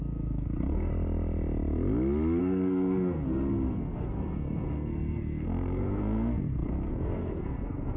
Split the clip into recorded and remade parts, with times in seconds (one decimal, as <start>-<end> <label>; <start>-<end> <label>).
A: 0.0-0.9 remade; 0.9-2.4 recorded; 2.4-8.0 remade